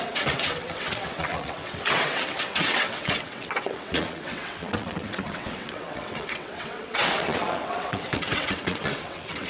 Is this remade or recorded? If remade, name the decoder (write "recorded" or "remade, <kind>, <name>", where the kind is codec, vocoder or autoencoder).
remade, vocoder, WaveNeXt